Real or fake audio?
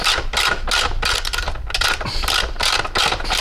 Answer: real